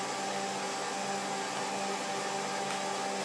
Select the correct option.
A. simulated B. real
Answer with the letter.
B